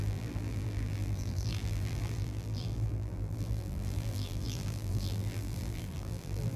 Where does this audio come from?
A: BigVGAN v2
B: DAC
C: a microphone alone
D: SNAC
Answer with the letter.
A